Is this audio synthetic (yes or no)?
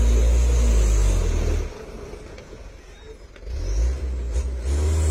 no